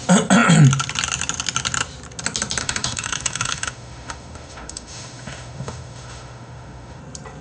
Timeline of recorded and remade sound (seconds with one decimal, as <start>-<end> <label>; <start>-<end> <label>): 0.0-2.6 recorded; 2.6-7.0 remade; 7.0-7.4 recorded